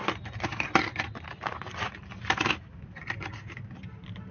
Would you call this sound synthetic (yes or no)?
no